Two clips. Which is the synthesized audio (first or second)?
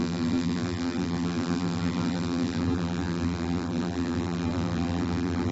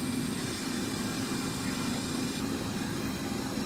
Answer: first